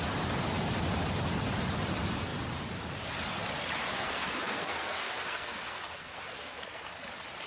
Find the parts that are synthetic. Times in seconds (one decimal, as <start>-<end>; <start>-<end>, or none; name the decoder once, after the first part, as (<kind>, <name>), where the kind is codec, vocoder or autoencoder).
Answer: 3.9-7.0 (codec, SNAC)